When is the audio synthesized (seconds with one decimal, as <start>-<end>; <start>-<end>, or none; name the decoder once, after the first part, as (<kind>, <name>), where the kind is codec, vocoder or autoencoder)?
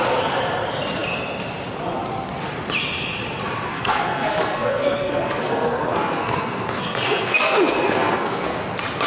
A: 3.7-8.6 (codec, SNAC)